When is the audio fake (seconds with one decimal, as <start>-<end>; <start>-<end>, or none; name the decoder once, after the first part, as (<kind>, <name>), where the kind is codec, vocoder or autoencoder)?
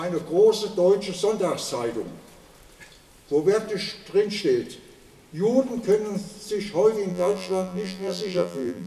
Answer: 7.1-8.9 (vocoder, BigVGAN v2)